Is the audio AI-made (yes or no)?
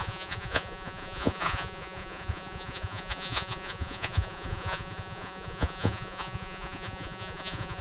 yes